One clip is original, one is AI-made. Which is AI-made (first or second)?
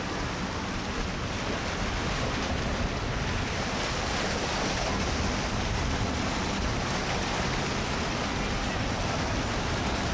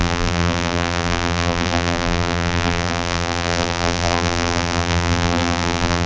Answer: second